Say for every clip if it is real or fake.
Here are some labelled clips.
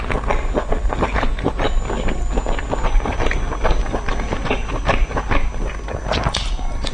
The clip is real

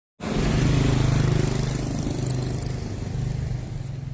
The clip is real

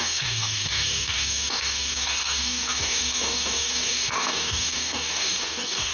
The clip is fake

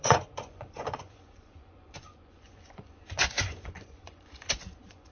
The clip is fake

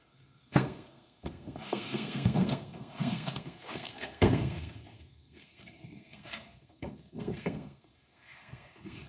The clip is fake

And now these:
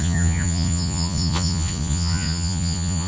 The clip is fake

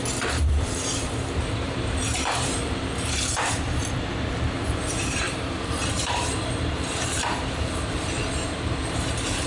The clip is fake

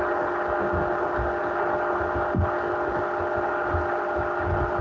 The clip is real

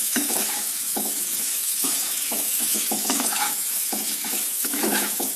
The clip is fake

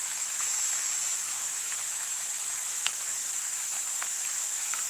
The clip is fake